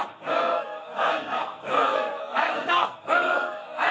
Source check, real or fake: fake